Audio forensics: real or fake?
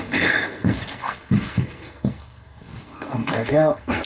fake